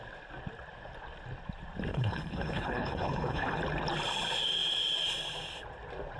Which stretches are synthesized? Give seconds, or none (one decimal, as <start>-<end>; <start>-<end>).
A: 1.9-3.6